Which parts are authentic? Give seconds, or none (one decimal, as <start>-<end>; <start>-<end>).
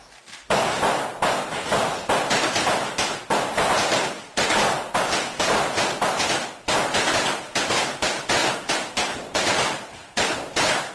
0.0-1.8; 6.0-10.9